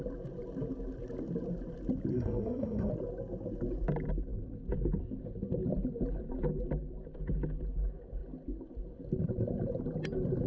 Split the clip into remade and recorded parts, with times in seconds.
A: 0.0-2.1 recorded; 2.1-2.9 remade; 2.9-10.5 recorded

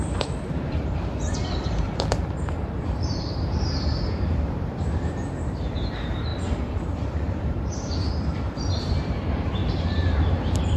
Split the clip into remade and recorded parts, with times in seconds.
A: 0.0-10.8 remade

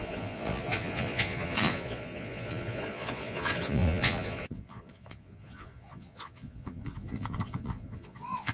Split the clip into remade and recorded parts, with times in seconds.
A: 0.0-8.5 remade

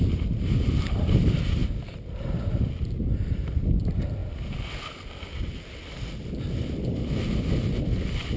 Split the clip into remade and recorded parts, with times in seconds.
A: 0.0-1.6 recorded; 1.6-2.4 remade; 2.4-8.4 recorded